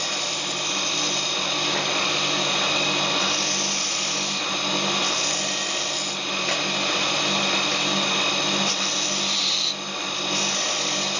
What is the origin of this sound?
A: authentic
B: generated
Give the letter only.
A